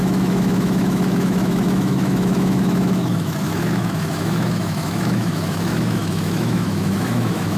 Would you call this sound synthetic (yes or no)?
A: yes